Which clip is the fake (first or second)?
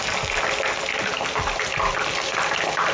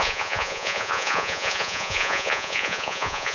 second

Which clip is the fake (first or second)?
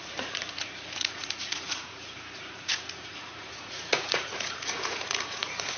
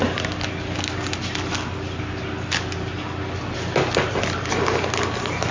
first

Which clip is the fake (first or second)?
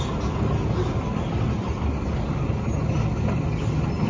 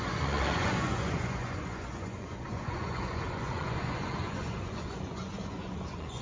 second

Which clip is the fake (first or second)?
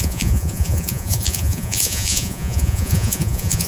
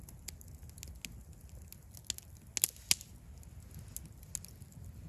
first